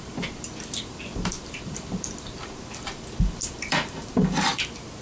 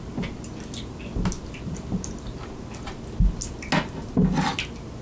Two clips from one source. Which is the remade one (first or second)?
first